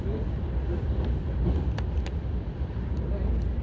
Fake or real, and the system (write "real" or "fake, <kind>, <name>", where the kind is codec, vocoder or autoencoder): fake, vocoder, BigVGAN v2